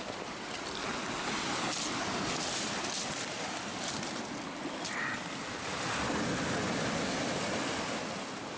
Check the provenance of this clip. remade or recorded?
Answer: recorded